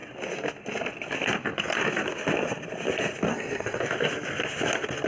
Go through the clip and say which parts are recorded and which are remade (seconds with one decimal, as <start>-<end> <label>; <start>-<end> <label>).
0.0-3.3 recorded; 3.3-3.8 remade; 3.8-5.1 recorded